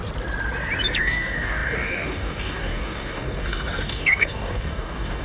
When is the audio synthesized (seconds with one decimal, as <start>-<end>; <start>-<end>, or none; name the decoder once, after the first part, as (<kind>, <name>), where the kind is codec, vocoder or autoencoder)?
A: 1.0-5.2 (codec, DAC)